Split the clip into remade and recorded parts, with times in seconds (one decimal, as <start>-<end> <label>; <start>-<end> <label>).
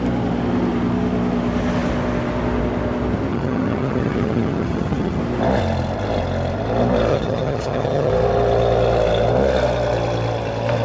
0.0-3.3 recorded; 3.3-5.2 remade; 5.2-7.1 recorded; 7.1-8.1 remade; 8.1-10.8 recorded